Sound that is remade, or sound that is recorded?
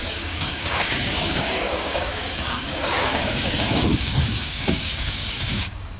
remade